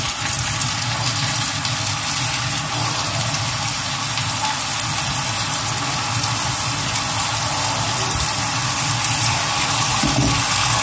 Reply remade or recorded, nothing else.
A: recorded